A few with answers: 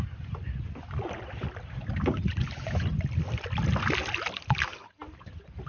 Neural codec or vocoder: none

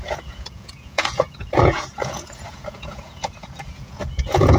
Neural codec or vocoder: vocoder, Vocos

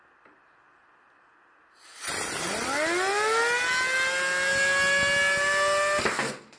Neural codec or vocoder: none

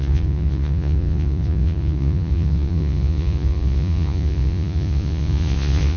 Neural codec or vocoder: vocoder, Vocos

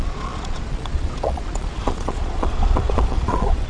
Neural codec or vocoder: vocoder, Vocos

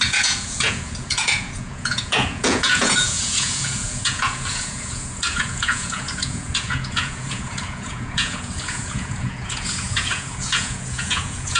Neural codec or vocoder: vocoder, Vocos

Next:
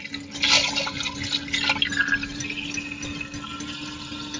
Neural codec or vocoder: none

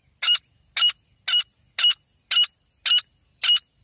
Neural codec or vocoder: none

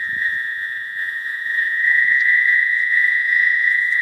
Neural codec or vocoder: vocoder, Vocos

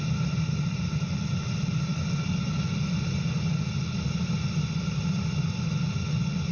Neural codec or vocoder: none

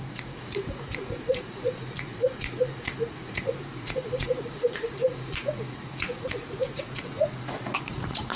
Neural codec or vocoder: vocoder, Vocos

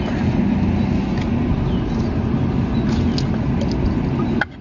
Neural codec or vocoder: none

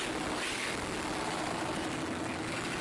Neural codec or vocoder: none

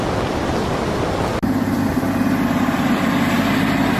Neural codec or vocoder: none